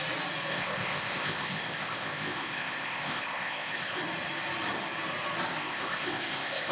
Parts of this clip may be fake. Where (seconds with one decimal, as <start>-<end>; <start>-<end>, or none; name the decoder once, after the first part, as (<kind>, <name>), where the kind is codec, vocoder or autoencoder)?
0.5-4.0 (codec, ZipCodec); 5.6-6.7

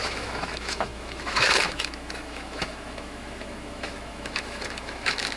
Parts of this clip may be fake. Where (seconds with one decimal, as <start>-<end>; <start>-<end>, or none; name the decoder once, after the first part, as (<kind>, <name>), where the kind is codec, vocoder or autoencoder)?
0.0-5.4 (autoencoder, DAC-VAE)

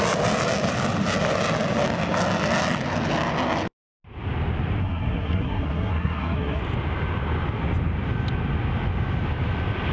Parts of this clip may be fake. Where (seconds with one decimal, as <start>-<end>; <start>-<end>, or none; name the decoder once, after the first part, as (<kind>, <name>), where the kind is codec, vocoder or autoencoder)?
4.8-6.6 (codec, SNAC)